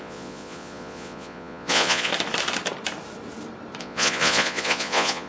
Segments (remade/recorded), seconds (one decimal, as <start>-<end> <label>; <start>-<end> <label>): 0.0-2.1 remade; 2.1-3.8 recorded; 3.8-5.3 remade